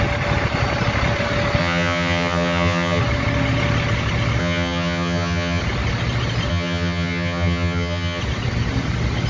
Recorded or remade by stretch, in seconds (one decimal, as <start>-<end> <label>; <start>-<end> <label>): 0.0-1.6 recorded; 1.6-3.0 remade; 3.0-4.4 recorded; 4.4-5.6 remade; 5.6-6.5 recorded; 6.5-8.2 remade; 8.2-9.3 recorded